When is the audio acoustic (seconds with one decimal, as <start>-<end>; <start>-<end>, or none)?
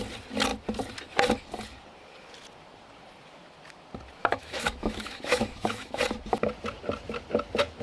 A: 0.0-4.2; 6.0-7.8